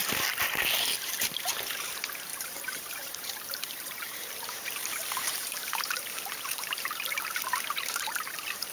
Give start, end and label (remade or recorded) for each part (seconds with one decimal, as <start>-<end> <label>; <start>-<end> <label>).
0.0-1.0 recorded; 1.0-8.7 remade